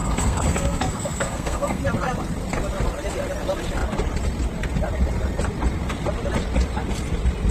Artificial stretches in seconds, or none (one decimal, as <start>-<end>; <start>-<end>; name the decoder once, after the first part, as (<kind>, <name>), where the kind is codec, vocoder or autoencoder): 0.0-1.8 (codec, SNAC)